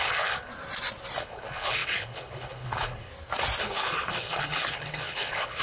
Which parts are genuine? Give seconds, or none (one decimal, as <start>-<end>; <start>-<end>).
0.5-1.2; 3.1-3.6

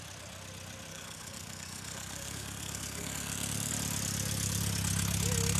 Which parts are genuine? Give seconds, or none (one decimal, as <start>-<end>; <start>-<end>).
0.0-0.9; 3.7-5.6

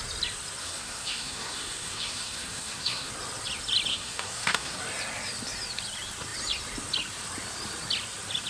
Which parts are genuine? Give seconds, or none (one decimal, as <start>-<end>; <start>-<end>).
0.0-0.6; 3.1-3.9; 4.8-8.5

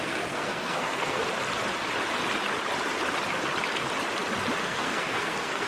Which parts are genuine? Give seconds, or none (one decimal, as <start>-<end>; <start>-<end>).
1.2-4.6

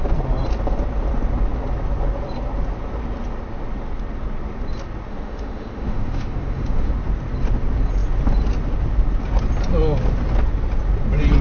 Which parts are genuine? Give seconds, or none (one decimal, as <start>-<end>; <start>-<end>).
0.0-5.1; 6.9-11.4

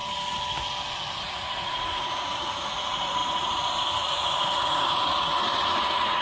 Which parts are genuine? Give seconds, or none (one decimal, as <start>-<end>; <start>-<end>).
0.0-1.2